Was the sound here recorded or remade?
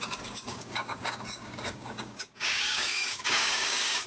remade